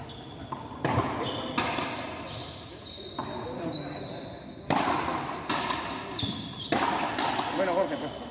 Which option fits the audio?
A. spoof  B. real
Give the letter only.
B